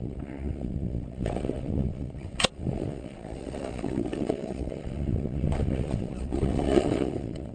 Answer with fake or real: fake